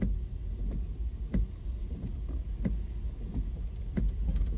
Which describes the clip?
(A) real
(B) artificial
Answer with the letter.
A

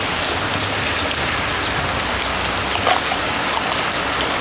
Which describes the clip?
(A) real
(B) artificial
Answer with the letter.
A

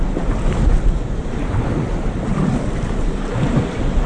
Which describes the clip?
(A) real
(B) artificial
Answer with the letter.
A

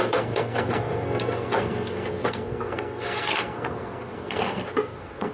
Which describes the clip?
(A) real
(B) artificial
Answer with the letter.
B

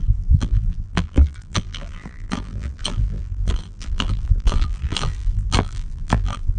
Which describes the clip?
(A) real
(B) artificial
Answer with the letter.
B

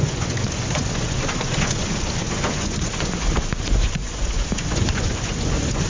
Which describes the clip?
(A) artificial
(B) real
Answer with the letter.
A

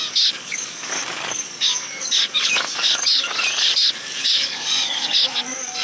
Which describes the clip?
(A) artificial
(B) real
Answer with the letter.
A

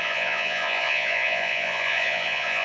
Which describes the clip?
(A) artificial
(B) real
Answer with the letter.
A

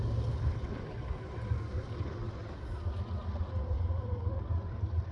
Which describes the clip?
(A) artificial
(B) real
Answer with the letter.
B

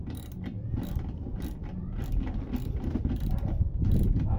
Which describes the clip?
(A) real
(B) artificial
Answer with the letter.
B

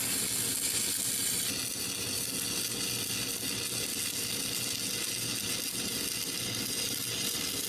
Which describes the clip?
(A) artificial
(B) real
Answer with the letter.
B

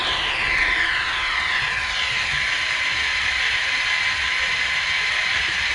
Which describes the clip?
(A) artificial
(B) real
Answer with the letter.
B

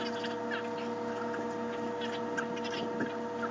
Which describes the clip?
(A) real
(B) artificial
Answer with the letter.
A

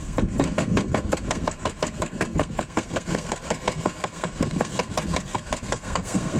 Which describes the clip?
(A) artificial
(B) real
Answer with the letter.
A